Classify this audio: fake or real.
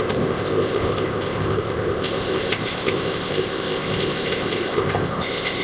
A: fake